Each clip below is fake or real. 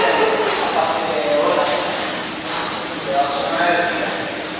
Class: real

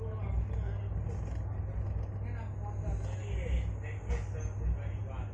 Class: real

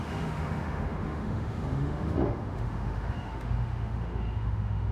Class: fake